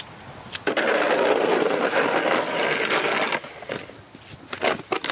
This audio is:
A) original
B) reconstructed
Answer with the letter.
A